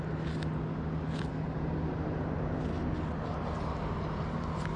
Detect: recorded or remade recorded